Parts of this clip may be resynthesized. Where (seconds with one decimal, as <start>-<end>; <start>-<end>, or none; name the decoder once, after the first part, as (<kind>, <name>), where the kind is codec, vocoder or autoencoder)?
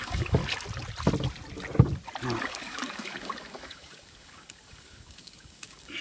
0.0-0.4 (codec, DAC); 2.4-6.0